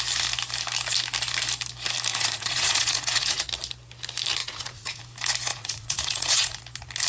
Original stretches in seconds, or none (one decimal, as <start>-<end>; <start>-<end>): 0.0-2.1; 3.5-4.4; 5.0-5.5; 6.6-7.1